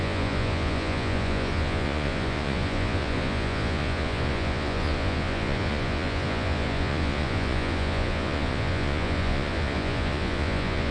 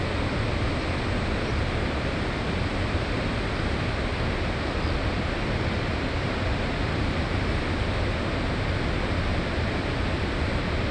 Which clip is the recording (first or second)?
second